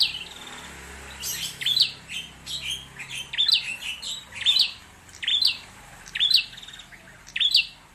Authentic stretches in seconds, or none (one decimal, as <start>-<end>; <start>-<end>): 0.0-7.9